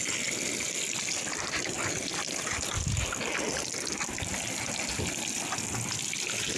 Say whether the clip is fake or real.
real